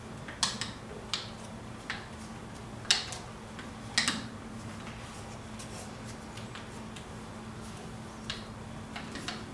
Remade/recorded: recorded